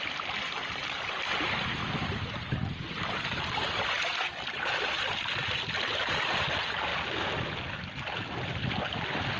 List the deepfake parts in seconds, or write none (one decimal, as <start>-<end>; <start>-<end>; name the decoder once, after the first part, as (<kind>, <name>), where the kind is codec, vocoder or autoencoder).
none